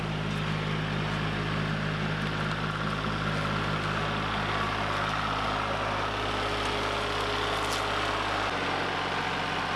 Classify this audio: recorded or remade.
recorded